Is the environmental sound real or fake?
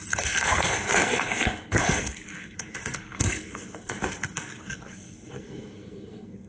fake